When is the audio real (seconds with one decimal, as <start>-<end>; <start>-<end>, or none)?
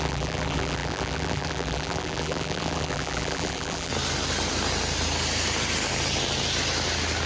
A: 3.9-7.3